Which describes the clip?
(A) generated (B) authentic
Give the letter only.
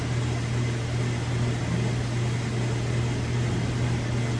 A